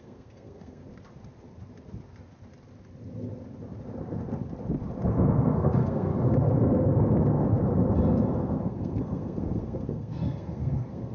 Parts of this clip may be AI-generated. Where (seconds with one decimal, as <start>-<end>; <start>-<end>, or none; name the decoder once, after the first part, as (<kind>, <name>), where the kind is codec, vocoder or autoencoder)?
0.0-0.8 (codec, SNAC); 5.1-6.1; 8.4-11.1